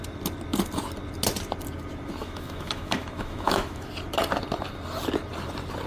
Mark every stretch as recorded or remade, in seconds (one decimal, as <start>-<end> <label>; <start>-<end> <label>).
0.0-2.2 recorded; 2.2-3.9 remade; 3.9-5.9 recorded